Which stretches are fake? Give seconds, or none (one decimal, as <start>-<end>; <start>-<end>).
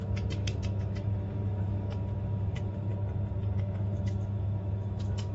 0.0-2.9; 3.6-5.3